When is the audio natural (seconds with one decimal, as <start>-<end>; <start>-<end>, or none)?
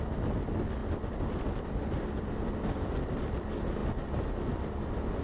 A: 0.0-5.2